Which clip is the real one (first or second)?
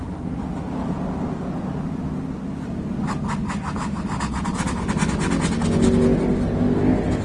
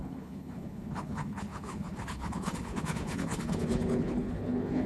first